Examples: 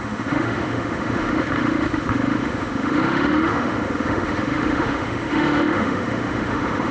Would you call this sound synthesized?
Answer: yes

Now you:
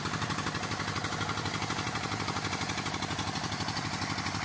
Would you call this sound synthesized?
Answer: no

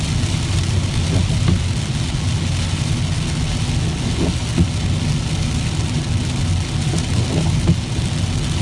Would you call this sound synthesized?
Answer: no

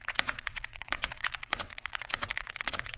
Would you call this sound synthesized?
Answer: yes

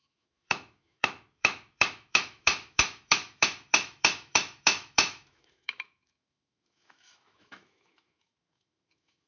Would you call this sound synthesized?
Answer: yes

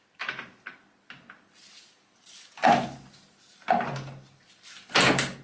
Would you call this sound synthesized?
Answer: no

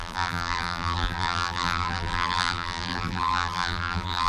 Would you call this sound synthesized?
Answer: yes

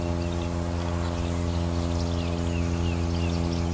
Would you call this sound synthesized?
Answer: no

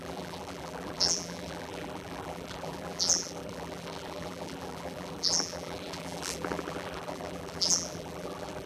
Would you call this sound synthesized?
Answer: yes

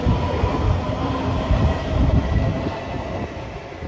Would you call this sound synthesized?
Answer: no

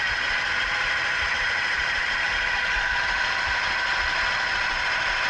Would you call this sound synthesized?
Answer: no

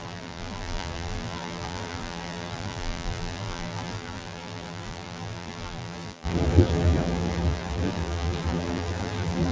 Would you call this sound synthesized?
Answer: yes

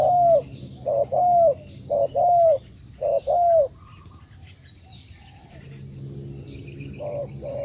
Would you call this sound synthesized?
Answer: no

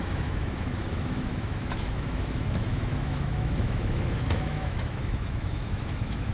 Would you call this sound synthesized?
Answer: yes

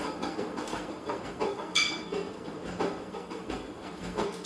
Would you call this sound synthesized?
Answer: yes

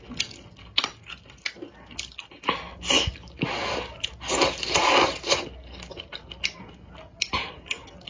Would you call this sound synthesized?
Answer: no